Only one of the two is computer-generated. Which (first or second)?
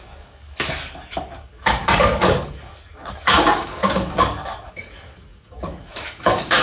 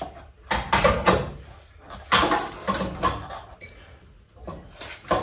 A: first